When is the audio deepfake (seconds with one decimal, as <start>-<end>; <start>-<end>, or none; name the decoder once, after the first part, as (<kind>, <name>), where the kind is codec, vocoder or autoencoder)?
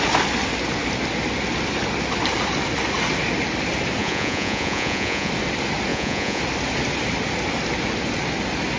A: 4.0-5.3 (vocoder, Vocos); 5.9-6.4